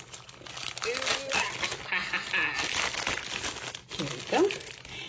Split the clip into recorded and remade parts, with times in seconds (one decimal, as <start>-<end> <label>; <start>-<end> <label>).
0.0-5.1 recorded